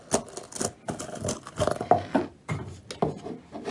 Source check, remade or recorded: recorded